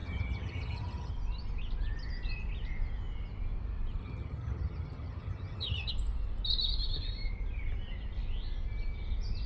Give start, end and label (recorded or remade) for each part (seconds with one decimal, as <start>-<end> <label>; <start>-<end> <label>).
0.0-1.1 remade; 1.1-4.0 recorded; 4.0-5.9 remade; 5.9-9.5 recorded